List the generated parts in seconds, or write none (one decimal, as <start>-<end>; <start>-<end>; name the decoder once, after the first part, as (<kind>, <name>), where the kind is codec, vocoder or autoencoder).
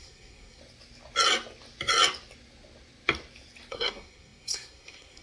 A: 0.0-0.6 (codec, SNAC); 3.7-5.2